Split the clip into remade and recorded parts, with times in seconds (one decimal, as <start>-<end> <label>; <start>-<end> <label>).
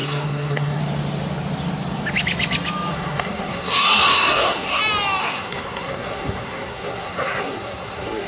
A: 0.0-0.8 remade; 0.8-2.9 recorded; 2.9-4.8 remade; 4.8-5.2 recorded; 5.2-8.3 remade